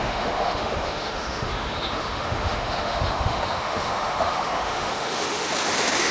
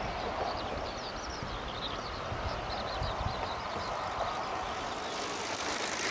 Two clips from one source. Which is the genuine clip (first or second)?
second